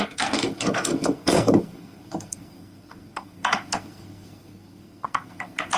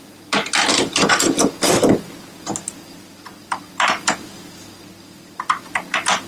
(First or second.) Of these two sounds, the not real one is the first